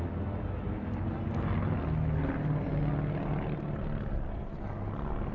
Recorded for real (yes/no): yes